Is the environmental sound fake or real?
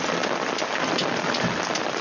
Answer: real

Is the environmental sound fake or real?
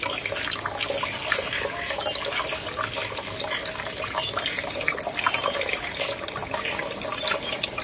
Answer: real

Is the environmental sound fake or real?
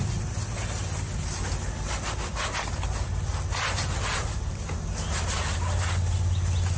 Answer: real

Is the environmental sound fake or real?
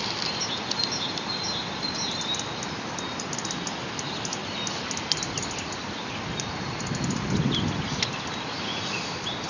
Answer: real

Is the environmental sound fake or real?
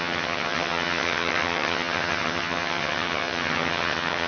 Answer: fake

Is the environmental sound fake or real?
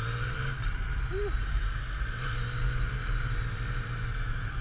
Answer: real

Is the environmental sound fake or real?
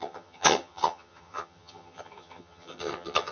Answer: fake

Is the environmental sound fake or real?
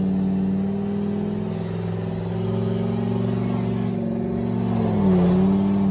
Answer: real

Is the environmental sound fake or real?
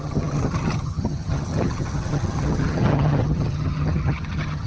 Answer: fake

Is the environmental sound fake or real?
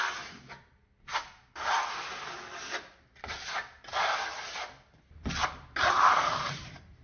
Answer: real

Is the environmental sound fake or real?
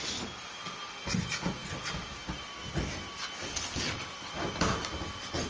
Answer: real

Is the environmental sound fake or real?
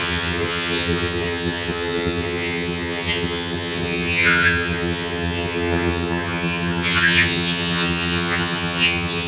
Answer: fake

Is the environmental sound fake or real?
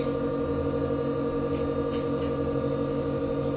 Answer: real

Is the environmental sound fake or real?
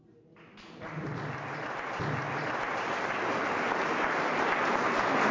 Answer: real